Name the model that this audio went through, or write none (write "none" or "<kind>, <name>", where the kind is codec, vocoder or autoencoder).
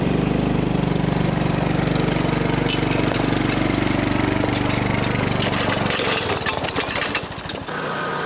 none